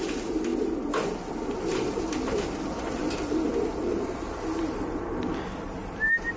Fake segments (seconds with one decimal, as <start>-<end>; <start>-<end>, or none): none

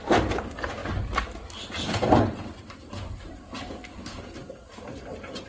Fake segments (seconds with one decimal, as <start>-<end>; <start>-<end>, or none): none

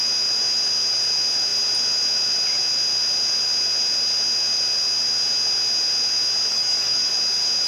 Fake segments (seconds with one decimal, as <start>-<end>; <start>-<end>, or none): 6.5-7.1

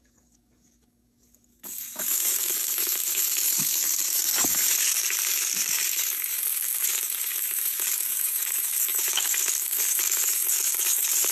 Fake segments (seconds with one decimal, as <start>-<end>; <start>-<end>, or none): 0.0-11.3

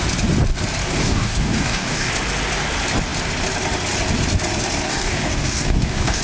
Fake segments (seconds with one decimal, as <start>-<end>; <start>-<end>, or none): 0.8-2.1; 4.9-6.2